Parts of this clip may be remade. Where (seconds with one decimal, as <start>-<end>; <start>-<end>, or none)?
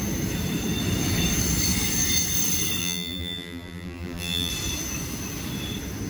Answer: 2.8-4.5